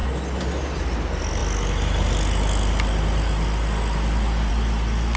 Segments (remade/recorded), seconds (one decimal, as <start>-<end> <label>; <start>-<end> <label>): 0.0-5.2 recorded